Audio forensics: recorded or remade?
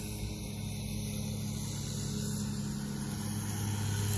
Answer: recorded